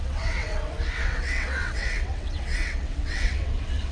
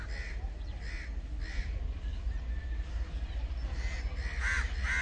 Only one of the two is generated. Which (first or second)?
first